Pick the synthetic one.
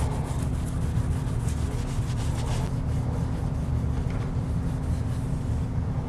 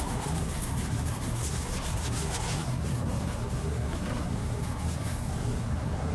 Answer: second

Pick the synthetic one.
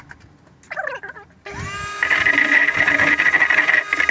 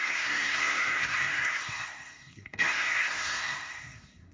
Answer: second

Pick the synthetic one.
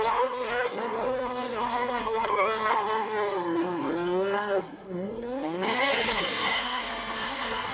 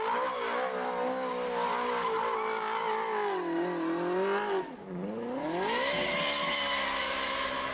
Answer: first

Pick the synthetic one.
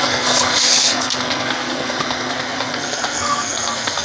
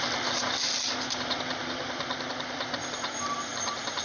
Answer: first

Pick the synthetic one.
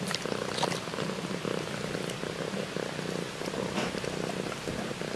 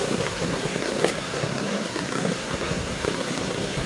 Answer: second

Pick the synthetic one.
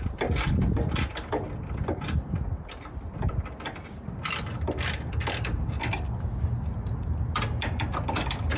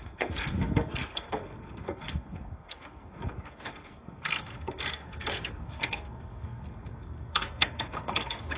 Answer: second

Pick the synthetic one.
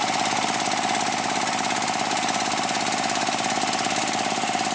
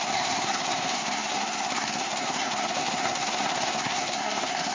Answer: second